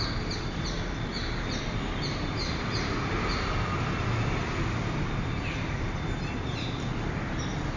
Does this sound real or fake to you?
real